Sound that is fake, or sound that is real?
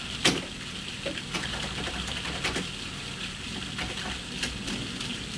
fake